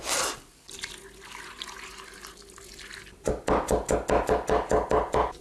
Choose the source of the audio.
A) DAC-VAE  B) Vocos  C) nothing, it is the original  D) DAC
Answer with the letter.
C